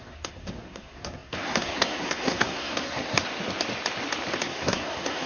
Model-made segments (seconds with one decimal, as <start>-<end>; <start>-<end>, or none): 0.0-3.2; 4.4-5.3